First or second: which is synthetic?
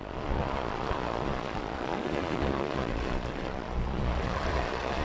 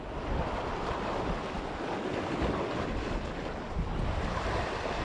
first